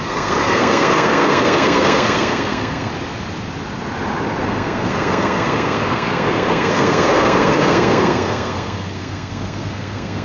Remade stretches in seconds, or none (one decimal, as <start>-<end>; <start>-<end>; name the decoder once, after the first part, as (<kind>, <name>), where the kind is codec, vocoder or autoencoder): 0.0-2.9 (codec, SNAC); 4.4-10.2